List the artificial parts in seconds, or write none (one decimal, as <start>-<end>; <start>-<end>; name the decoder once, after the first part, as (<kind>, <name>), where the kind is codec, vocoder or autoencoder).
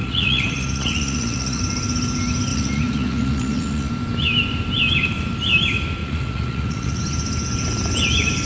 0.0-1.6 (vocoder, Vocos); 2.5-3.9; 6.0-7.0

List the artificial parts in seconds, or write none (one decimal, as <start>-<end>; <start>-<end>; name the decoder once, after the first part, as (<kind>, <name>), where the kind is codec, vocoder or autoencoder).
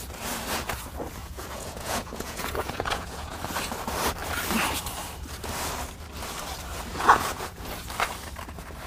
1.2-3.4 (vocoder, Vocos); 6.9-7.7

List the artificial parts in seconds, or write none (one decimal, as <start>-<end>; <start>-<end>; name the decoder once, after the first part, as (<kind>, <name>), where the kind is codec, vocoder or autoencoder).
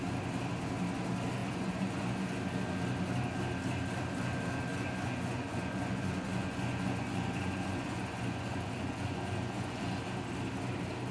1.4-2.4 (vocoder, Vocos); 4.7-10.0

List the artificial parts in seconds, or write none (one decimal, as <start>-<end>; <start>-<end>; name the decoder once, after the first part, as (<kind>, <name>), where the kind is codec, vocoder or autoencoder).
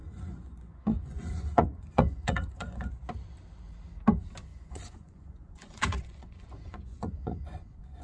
0.0-2.9 (vocoder, Vocos); 4.5-8.0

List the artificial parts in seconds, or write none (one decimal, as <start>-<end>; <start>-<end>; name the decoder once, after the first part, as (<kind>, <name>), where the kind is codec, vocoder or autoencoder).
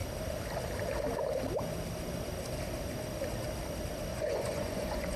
4.1-5.2 (vocoder, Vocos)